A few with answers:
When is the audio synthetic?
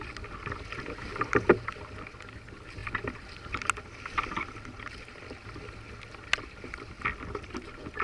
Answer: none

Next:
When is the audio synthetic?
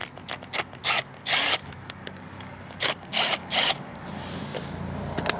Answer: 0.9-4.5 (codec, DAC)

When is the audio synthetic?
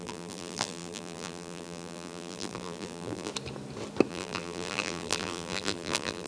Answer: 0.0-3.3 (vocoder, BigVGAN v2); 4.1-6.3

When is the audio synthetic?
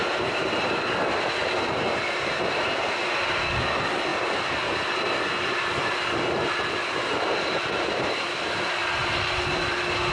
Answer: 0.0-0.6 (vocoder, BigVGAN v2); 1.4-2.9; 8.8-9.4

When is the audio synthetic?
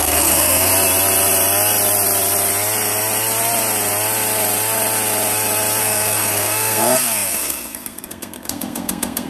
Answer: 0.0-0.7 (codec, SNAC); 5.8-9.3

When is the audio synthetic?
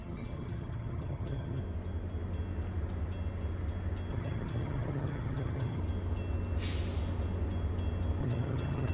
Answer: 0.0-1.6 (vocoder, HiFi-GAN); 4.1-5.8; 8.2-8.9